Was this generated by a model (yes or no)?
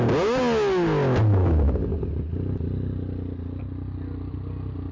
no